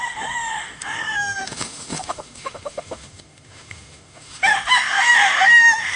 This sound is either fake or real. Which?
fake